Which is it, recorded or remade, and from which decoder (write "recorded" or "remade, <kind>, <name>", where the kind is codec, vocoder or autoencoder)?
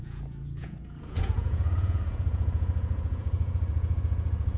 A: remade, vocoder, Vocos